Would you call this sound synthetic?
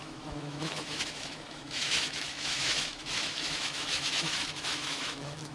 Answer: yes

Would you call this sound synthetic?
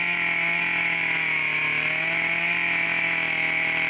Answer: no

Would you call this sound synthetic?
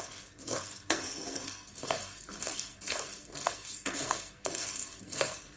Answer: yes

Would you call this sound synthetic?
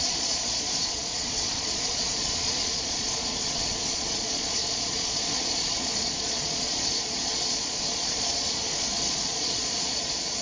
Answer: yes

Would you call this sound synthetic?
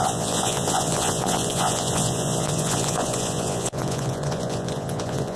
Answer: yes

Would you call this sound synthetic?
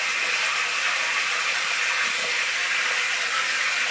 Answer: no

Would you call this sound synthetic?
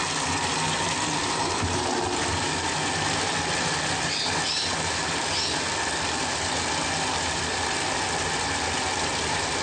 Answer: no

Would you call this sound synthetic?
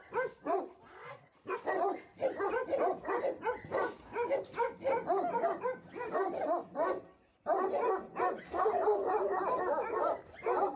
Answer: no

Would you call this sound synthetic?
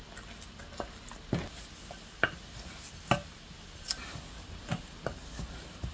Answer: no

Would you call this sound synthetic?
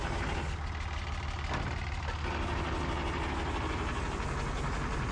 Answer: no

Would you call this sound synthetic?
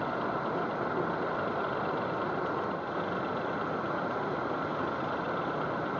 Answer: no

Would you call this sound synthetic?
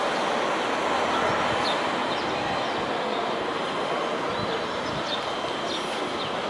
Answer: no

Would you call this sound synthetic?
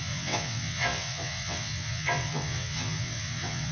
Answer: yes